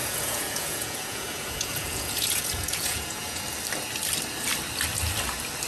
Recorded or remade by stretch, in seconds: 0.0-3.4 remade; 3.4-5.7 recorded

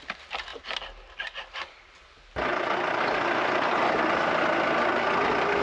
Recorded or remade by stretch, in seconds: 0.0-5.6 recorded

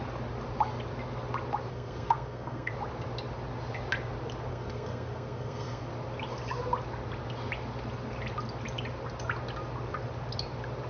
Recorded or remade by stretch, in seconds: 0.0-1.7 recorded; 1.7-2.7 remade; 2.7-4.5 recorded; 4.5-5.9 remade; 5.9-10.9 recorded

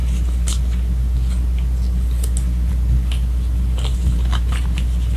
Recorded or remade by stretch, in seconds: 0.0-5.2 recorded

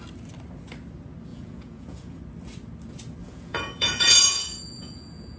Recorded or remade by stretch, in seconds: 0.0-1.3 recorded; 1.3-2.2 remade; 2.2-3.2 recorded; 3.2-5.4 remade

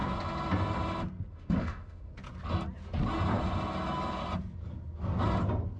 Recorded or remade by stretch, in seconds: 0.0-1.3 recorded; 1.3-2.1 remade; 2.1-5.8 recorded

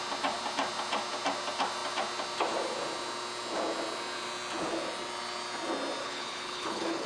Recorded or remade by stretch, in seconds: 0.0-6.0 recorded; 6.0-7.1 remade